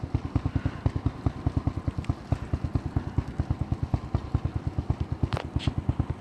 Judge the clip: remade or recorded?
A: recorded